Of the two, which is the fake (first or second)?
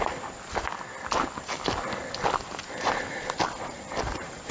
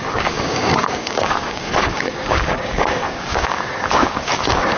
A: second